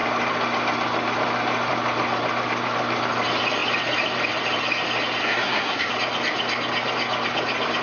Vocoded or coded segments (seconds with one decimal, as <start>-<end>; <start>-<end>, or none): 5.2-5.9